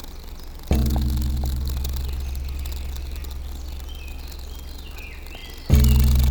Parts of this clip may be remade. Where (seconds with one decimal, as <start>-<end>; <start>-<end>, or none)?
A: none